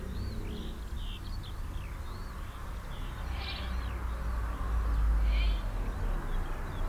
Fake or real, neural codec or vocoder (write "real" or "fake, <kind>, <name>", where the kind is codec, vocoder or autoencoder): real